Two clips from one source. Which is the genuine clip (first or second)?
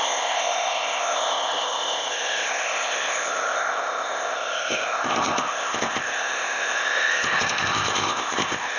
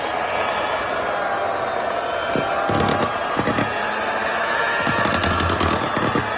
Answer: second